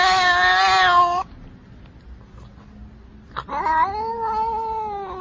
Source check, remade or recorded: recorded